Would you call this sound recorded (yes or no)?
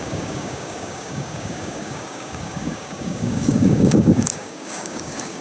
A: no